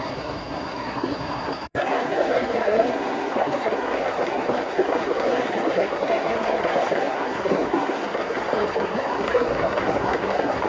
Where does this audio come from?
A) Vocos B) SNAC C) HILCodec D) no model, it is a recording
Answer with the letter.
B